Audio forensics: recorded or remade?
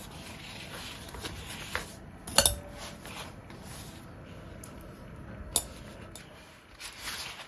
recorded